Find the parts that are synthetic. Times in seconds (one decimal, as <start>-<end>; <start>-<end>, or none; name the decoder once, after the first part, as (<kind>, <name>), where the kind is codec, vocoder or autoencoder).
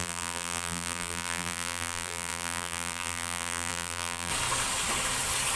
0.0-4.3 (vocoder, BigVGAN v2)